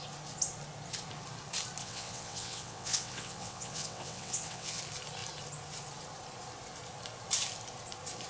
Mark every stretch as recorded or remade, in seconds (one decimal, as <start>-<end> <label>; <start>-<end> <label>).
0.0-1.8 recorded; 1.8-4.8 remade; 4.8-8.3 recorded